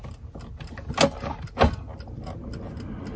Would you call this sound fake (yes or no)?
no